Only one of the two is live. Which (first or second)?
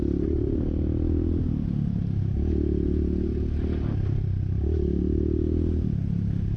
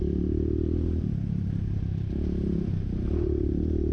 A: first